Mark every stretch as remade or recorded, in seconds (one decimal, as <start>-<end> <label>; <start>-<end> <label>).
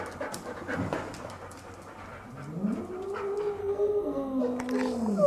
0.0-3.6 recorded; 3.6-4.4 remade; 4.4-5.3 recorded